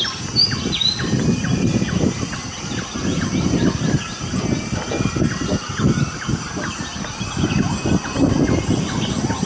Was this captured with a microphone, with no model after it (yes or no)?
yes